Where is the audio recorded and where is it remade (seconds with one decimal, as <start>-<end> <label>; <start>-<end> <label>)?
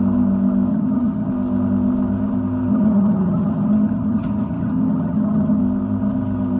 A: 0.0-0.7 recorded; 0.7-1.3 remade; 1.3-2.7 recorded; 2.7-5.6 remade; 5.6-6.6 recorded